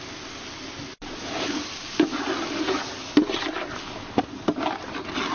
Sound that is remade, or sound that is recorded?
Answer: recorded